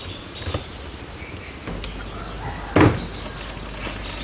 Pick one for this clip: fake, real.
real